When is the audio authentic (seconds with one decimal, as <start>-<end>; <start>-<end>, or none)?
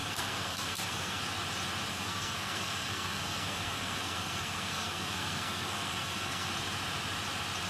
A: 1.2-1.9; 6.5-7.7